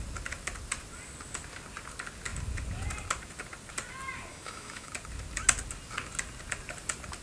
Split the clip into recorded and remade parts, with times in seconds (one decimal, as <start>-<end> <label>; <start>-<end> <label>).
0.0-4.3 recorded; 4.3-4.9 remade; 4.9-7.2 recorded